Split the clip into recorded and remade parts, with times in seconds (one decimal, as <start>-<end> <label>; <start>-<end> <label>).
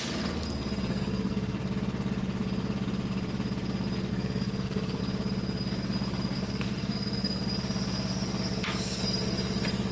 0.0-0.9 recorded; 0.9-1.6 remade; 1.6-4.1 recorded; 4.1-5.0 remade; 5.0-6.3 recorded; 6.3-7.4 remade; 7.4-9.9 recorded